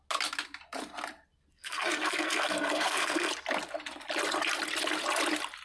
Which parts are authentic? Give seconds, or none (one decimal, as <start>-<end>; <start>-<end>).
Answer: 0.0-1.5; 3.3-5.6